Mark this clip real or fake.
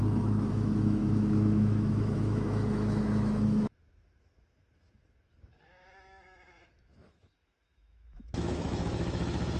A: fake